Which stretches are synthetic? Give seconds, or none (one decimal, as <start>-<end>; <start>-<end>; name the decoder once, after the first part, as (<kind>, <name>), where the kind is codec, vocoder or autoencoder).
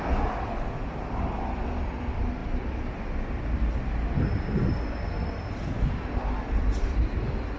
none